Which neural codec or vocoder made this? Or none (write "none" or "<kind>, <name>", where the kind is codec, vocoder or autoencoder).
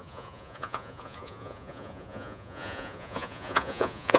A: vocoder, Vocos